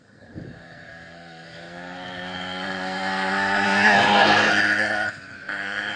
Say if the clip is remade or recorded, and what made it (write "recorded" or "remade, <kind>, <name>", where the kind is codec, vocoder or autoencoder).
remade, codec, SNAC